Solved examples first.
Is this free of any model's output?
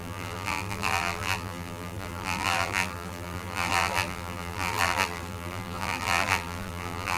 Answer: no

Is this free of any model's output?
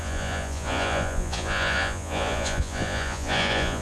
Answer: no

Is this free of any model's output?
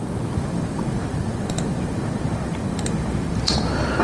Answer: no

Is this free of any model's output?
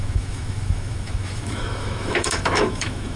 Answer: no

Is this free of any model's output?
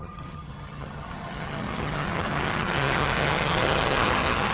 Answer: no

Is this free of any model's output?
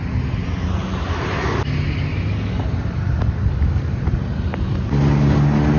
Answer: yes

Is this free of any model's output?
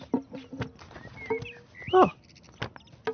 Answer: yes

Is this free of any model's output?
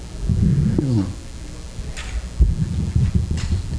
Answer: yes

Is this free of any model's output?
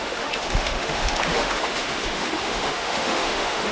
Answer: no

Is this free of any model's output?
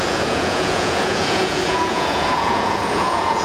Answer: no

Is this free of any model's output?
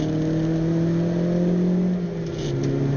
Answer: yes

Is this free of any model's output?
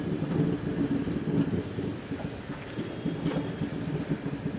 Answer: yes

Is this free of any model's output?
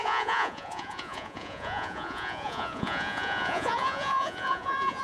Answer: no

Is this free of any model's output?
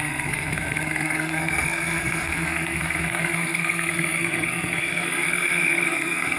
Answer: no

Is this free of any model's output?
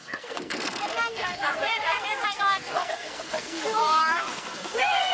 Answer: no